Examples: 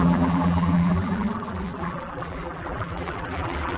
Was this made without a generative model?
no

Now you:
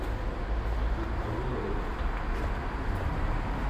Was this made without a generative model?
yes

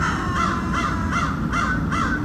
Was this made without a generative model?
yes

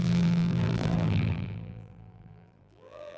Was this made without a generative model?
no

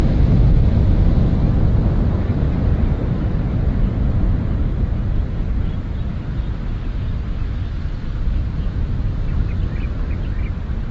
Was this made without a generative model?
yes